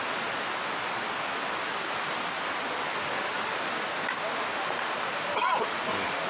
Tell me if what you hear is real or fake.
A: real